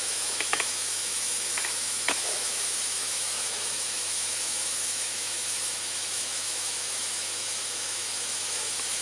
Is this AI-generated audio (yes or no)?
yes